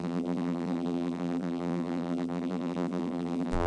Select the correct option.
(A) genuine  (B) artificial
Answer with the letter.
B